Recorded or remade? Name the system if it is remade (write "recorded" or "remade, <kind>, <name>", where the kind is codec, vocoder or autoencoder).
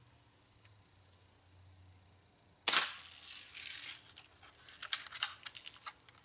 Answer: recorded